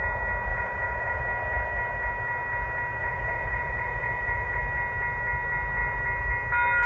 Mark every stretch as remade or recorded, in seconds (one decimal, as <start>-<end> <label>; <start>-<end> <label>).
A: 0.0-0.5 recorded; 0.5-1.2 remade; 1.2-3.0 recorded; 3.0-4.6 remade; 4.6-6.9 recorded